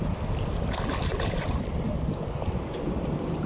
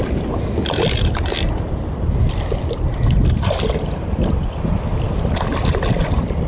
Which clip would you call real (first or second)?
second